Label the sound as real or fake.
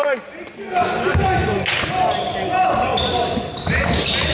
real